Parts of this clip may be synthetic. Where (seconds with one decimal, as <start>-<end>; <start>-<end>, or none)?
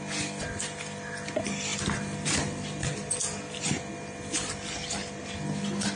none